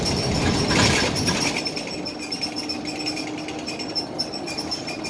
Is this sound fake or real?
real